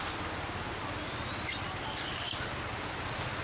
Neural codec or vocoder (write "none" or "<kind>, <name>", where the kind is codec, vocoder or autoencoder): none